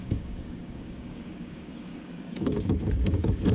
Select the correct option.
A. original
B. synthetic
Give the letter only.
B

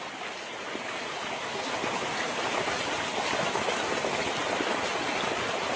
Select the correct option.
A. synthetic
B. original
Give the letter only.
B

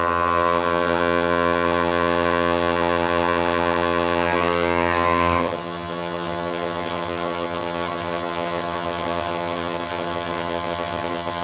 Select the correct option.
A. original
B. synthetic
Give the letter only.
B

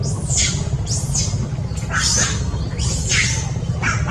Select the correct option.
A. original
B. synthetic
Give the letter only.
A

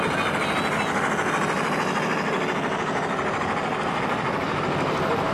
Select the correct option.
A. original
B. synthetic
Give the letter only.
A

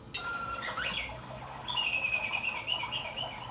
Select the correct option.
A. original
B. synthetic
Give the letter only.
A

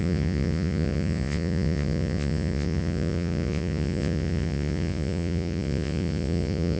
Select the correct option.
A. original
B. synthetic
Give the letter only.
B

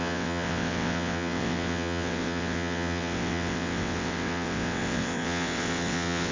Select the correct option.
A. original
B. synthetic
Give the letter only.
B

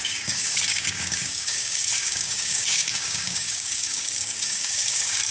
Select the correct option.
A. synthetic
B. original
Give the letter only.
A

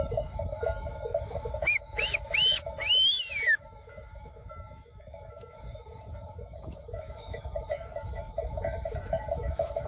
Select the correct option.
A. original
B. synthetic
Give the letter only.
B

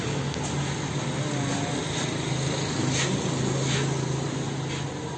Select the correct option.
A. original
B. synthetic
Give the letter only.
A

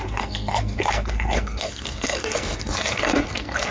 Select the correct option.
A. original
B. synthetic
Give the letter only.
B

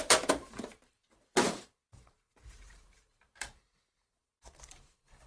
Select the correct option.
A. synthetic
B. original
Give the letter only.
A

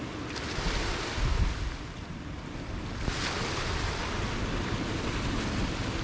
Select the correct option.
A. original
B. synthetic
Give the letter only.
A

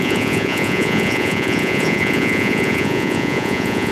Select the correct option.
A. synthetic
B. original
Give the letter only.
A